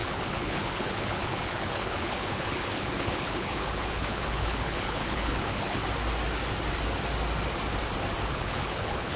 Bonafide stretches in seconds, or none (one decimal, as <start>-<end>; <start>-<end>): 5.8-8.3